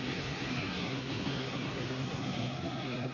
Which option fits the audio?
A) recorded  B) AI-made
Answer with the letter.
B